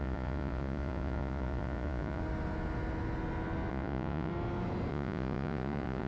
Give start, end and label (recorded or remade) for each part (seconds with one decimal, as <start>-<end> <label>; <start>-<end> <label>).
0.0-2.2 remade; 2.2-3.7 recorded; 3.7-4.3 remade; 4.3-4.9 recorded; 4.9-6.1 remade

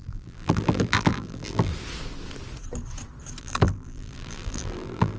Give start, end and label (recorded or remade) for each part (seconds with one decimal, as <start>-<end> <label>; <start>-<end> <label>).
0.0-1.7 remade; 1.7-3.4 recorded; 3.4-5.2 remade

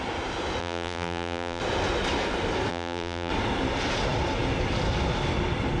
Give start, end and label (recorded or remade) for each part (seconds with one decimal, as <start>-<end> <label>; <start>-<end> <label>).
0.0-0.6 recorded; 0.6-1.6 remade; 1.6-2.7 recorded; 2.7-3.3 remade; 3.3-5.8 recorded